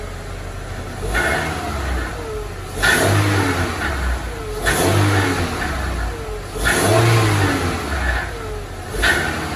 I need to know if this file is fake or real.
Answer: real